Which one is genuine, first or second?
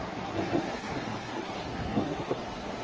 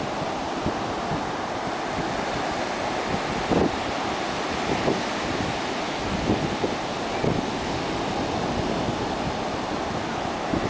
second